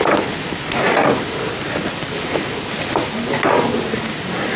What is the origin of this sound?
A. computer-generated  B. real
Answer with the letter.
B